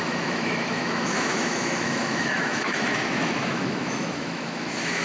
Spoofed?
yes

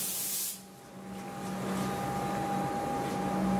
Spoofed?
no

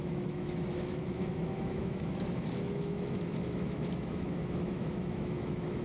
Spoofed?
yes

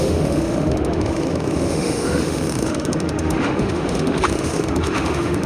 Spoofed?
yes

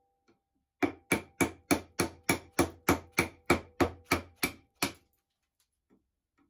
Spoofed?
no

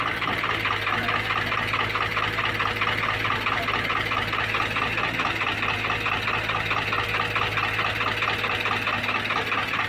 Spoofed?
no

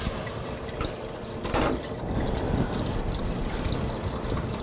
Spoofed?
no